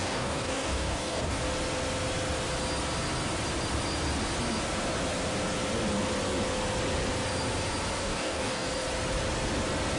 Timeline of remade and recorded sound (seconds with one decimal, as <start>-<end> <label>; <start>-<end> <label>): 0.0-1.4 remade; 1.4-8.0 recorded; 8.0-8.7 remade; 8.7-10.0 recorded